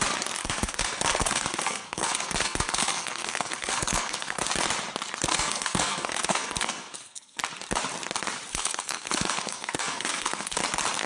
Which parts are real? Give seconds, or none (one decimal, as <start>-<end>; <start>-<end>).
0.0-0.4; 4.4-5.3; 7.4-8.5; 10.6-11.1